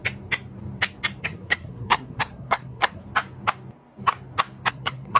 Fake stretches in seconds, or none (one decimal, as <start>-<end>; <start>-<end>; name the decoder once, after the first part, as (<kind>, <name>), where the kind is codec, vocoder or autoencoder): 1.2-3.0 (codec, SNAC); 4.7-5.2